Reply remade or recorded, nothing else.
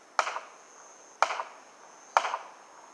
recorded